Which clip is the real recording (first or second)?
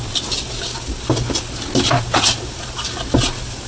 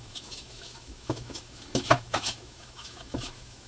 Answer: first